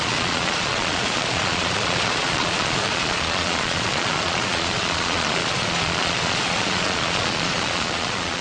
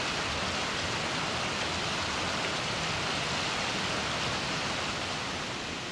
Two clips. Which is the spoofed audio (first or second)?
first